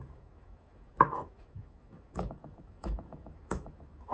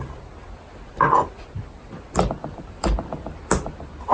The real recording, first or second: second